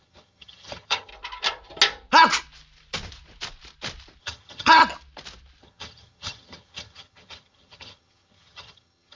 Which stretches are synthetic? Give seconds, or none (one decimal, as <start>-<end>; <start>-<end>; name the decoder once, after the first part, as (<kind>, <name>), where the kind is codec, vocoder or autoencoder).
0.0-1.1 (vocoder, HiFi-GAN); 4.2-4.8; 5.6-9.1